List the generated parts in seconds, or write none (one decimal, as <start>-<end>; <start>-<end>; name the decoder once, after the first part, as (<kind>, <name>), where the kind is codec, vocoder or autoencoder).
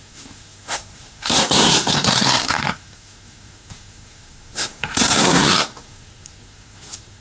0.0-7.2 (codec, SNAC)